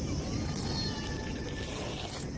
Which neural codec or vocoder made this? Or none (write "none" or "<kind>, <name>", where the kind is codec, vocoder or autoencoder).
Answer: none